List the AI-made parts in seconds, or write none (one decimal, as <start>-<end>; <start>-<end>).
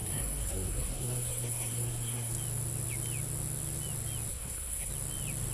0.0-2.3; 4.3-4.9